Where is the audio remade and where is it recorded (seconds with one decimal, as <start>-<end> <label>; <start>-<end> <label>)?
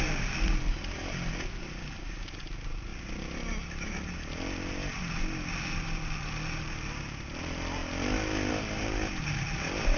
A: 0.0-10.0 recorded